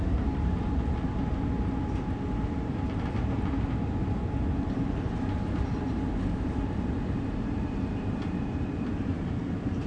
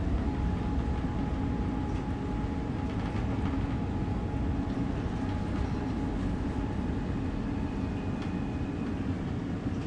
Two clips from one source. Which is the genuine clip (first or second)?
second